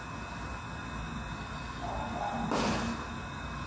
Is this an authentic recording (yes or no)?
yes